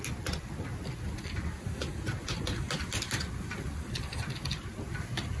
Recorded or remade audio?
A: recorded